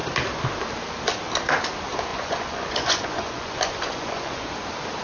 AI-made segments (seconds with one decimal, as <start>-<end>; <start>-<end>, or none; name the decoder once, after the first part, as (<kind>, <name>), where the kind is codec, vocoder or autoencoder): 2.1-4.5 (vocoder, Vocos)